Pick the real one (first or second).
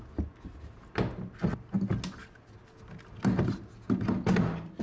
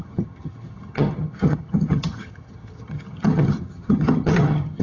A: first